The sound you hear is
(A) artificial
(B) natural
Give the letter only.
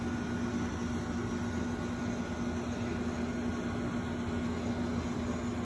B